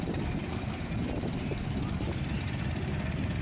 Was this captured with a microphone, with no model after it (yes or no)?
no